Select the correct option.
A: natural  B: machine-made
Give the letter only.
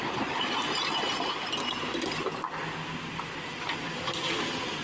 A